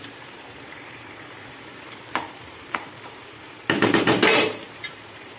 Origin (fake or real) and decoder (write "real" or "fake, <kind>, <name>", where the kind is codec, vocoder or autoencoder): fake, vocoder, BigVGAN v2